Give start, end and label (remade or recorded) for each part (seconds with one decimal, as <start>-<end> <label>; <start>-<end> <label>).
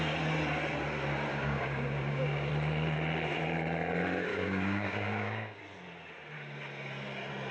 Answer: 0.0-1.3 recorded; 1.3-2.5 remade; 2.5-4.3 recorded; 4.3-5.6 remade; 5.6-7.5 recorded